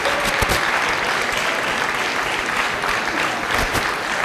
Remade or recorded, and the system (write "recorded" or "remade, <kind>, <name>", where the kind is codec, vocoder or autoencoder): recorded